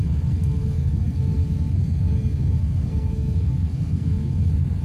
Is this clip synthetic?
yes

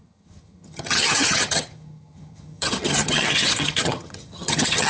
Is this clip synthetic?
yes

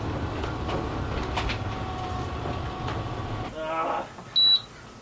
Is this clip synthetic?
no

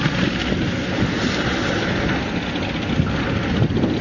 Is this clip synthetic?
no